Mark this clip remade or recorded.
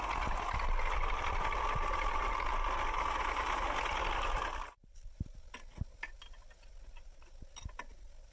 recorded